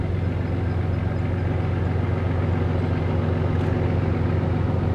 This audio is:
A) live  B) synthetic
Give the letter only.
A